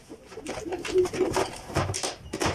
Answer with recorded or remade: remade